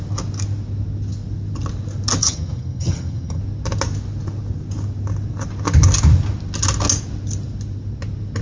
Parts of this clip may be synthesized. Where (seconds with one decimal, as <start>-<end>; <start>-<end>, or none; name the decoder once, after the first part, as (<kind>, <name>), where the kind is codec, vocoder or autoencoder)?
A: 2.2-3.4 (vocoder, HiFi-GAN)

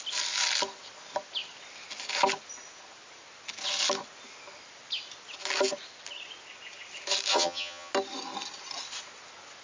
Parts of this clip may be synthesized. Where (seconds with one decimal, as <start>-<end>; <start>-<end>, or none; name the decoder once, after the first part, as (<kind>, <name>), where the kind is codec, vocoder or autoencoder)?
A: 7.3-7.9 (vocoder, HiFi-GAN)

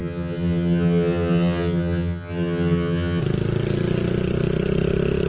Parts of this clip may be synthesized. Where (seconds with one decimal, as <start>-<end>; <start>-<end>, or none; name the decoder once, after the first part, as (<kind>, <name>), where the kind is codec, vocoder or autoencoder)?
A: 0.0-3.2 (vocoder, HiFi-GAN)

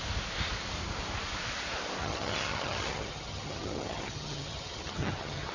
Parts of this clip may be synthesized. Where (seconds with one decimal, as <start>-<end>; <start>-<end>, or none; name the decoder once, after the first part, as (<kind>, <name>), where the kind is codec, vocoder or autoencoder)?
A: 2.0-5.5 (vocoder, HiFi-GAN)

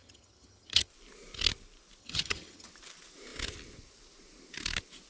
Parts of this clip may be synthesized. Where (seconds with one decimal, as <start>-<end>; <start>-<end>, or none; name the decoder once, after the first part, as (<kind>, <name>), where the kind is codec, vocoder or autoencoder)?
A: 0.0-0.9 (vocoder, HiFi-GAN); 2.0-2.7

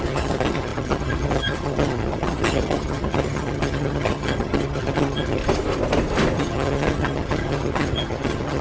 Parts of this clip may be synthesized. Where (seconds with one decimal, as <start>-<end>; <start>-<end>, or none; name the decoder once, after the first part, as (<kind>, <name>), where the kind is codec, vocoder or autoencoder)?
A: 0.0-5.4 (vocoder, HiFi-GAN); 6.4-8.6

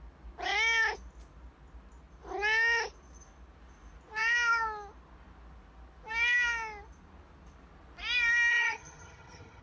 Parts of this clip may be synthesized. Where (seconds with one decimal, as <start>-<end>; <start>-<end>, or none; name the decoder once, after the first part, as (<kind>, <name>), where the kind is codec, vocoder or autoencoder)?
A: 8.5-9.6 (vocoder, HiFi-GAN)